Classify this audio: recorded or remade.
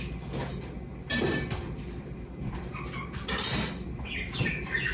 recorded